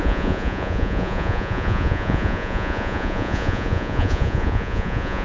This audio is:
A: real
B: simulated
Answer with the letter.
B